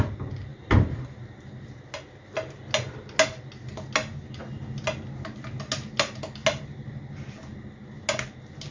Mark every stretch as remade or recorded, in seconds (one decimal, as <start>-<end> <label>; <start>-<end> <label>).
0.0-0.5 recorded; 0.5-1.5 remade; 1.5-8.7 recorded